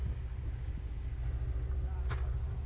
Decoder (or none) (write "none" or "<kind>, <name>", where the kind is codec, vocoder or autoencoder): none